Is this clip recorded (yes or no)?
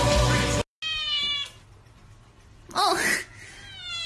yes